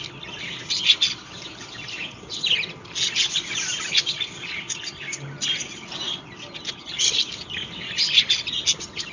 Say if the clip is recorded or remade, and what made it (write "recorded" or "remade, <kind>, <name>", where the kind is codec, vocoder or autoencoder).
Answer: recorded